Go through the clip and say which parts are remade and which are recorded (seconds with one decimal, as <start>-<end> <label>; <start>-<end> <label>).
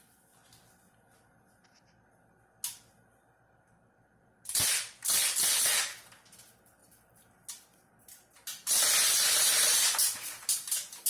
0.0-11.1 recorded